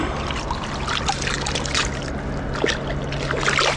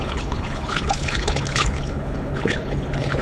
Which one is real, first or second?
first